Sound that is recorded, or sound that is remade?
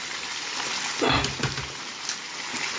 recorded